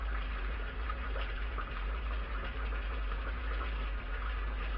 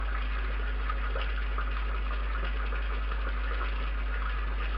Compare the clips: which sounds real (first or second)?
second